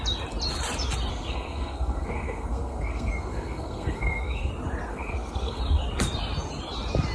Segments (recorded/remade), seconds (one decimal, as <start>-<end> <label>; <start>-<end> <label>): 0.0-1.1 recorded; 1.1-4.5 remade; 4.5-4.9 recorded; 4.9-5.6 remade; 5.6-7.1 recorded